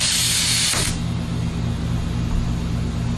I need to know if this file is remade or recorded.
recorded